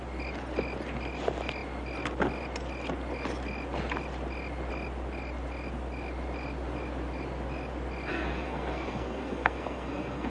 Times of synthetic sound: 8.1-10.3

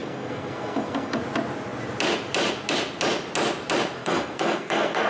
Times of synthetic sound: 0.0-1.2; 4.0-5.1

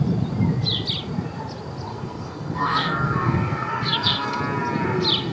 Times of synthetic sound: 1.9-4.4